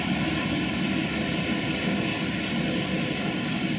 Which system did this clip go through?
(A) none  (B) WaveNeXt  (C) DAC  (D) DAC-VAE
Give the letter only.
A